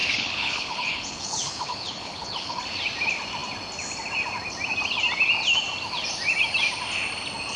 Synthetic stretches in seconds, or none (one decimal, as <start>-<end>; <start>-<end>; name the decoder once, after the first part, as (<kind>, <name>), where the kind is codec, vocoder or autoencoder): 0.0-2.6 (codec, HILCodec)